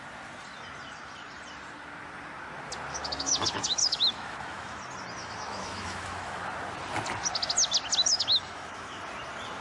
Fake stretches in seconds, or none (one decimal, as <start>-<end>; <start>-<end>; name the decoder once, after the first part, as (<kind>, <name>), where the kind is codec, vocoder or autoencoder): 2.9-4.8 (autoencoder, DAC-VAE); 5.2-6.4; 8.1-9.0